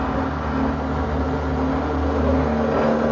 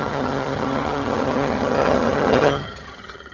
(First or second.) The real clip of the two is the first